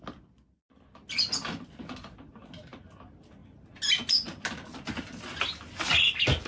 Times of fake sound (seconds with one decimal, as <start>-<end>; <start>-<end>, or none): none